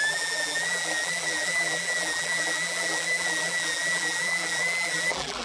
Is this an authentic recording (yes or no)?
no